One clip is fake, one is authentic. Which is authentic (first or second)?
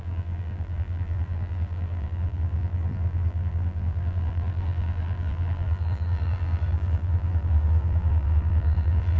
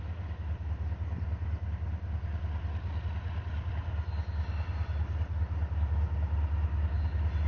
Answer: second